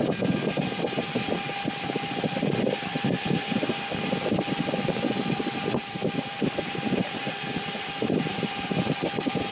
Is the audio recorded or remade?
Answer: recorded